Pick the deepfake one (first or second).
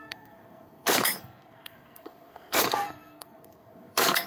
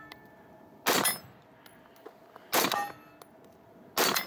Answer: first